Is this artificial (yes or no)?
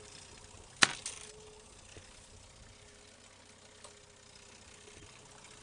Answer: no